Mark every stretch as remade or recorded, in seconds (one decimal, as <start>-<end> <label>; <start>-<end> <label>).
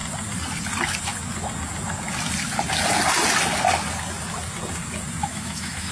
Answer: 0.0-5.2 recorded; 5.2-5.9 remade